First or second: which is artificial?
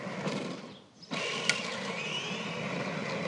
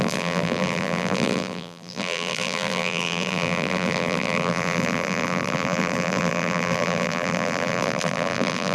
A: second